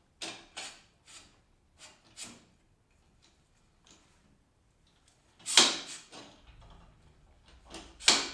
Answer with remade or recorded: recorded